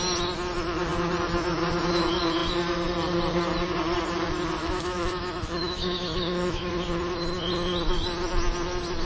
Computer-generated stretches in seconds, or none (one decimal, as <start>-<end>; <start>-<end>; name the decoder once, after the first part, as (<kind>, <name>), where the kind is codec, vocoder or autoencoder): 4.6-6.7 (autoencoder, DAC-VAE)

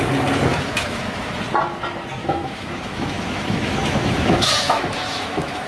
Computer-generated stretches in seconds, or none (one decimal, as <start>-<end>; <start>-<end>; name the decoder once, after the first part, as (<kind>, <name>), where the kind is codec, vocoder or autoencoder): 0.5-1.4 (autoencoder, DAC-VAE); 2.2-5.7

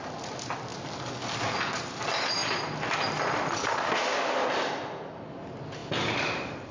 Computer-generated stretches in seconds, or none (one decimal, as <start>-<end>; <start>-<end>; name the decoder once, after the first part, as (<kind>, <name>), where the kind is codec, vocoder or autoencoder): none

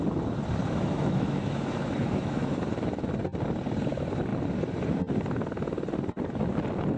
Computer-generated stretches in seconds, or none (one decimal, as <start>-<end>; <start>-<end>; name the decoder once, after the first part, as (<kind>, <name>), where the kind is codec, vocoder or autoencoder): 0.6-2.6 (autoencoder, DAC-VAE)

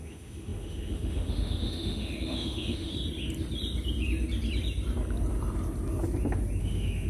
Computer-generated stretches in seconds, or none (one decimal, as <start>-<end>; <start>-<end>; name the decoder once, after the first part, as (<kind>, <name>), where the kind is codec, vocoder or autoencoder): 0.0-2.9 (autoencoder, DAC-VAE); 6.6-7.1

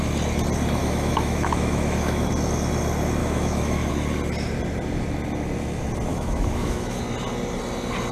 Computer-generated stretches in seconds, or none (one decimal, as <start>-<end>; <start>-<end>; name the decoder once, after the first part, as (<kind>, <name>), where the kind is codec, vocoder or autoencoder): 0.8-2.3 (autoencoder, DAC-VAE); 3.2-3.9; 6.1-7.0

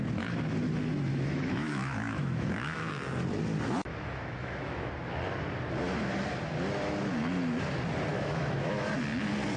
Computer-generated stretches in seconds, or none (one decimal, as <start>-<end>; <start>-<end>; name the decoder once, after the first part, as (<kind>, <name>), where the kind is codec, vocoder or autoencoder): 1.1-2.9 (autoencoder, DAC-VAE); 3.9-4.9; 8.1-8.9